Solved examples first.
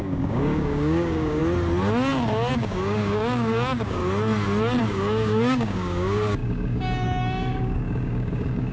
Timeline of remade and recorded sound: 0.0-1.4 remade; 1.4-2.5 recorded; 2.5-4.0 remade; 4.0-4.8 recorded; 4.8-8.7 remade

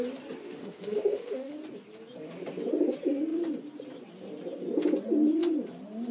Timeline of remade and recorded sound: 0.0-0.4 recorded; 0.4-1.5 remade; 1.5-6.1 recorded